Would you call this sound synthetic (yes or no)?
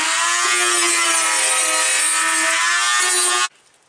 no